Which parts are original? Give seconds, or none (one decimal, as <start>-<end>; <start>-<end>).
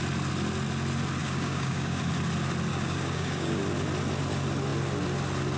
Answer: 0.0-1.2; 2.0-2.7; 3.6-5.6